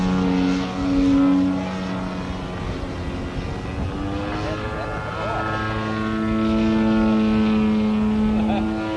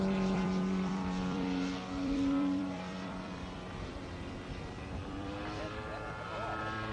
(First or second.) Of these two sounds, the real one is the first